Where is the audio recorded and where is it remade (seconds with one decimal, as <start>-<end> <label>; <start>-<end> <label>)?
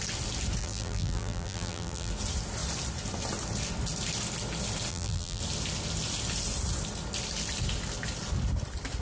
0.0-0.6 recorded; 0.6-2.1 remade; 2.1-4.9 recorded; 4.9-5.4 remade; 5.4-9.0 recorded